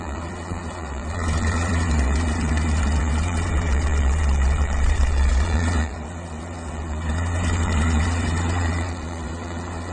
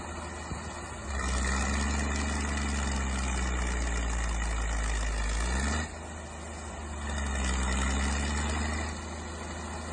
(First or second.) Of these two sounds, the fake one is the first